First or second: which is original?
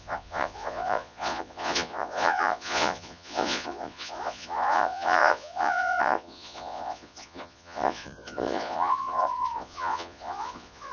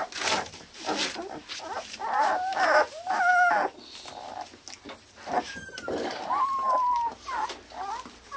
second